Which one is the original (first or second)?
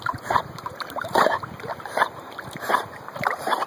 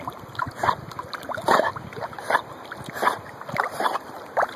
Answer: second